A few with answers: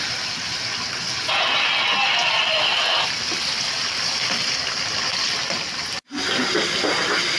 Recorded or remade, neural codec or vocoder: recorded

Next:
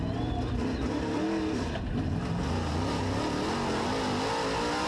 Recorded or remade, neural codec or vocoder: recorded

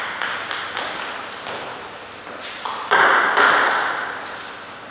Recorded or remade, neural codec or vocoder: recorded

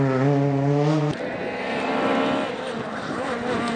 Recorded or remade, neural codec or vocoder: recorded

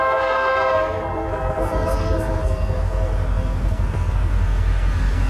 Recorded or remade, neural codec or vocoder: remade, codec, SNAC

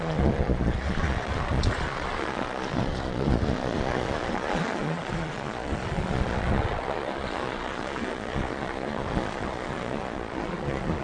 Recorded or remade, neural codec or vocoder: remade, vocoder, Vocos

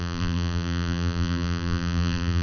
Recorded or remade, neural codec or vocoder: remade, vocoder, BigVGAN v2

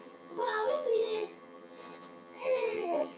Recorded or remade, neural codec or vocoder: remade, vocoder, HiFi-GAN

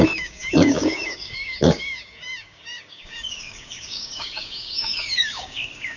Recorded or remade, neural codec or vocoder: remade, codec, DAC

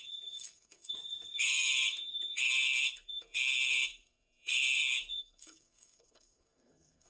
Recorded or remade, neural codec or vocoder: remade, codec, SNAC